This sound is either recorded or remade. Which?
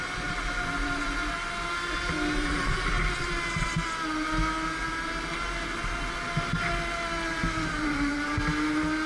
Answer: recorded